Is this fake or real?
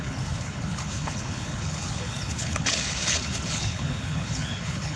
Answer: fake